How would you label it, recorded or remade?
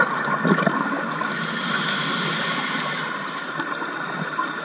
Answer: recorded